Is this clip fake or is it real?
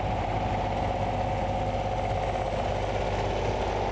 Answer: real